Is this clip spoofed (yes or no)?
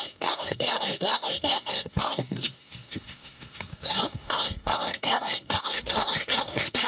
yes